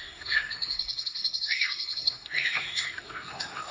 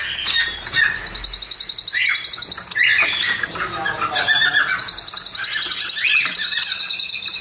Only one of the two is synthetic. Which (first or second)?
first